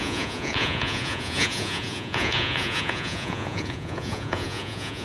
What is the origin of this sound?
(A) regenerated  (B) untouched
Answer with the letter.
A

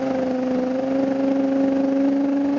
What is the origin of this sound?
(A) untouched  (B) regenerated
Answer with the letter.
A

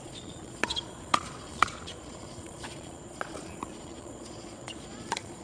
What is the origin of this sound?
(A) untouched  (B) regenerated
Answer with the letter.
B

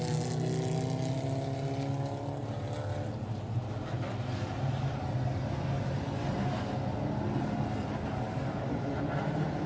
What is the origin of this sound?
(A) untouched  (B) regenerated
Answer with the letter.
A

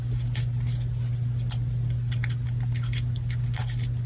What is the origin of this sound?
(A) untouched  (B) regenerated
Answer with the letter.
A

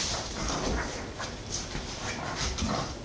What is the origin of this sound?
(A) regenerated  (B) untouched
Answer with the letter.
A